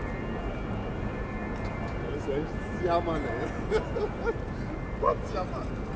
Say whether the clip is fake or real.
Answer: real